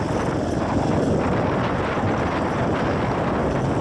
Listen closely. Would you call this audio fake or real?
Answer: real